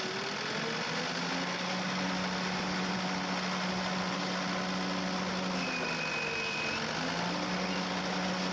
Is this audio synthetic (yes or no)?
no